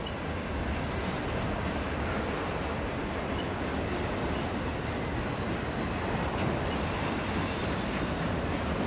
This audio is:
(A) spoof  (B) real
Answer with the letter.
B